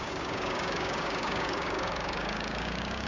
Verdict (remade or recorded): remade